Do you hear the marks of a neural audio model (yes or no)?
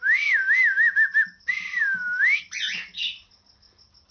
no